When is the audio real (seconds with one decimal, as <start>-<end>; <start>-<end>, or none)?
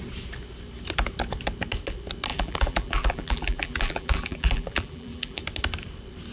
0.0-2.3; 5.4-6.3